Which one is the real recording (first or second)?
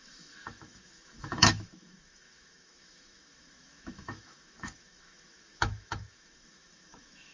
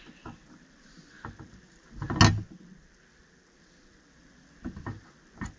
second